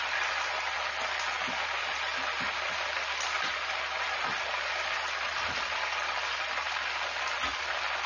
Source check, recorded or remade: recorded